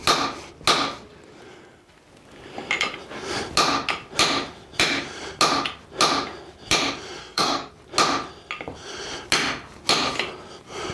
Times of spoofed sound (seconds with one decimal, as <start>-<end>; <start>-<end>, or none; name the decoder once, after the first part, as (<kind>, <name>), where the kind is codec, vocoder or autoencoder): 7.2-7.7 (codec, SNAC)